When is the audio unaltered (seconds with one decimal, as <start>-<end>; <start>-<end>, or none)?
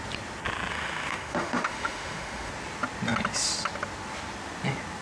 0.0-0.7; 2.5-5.0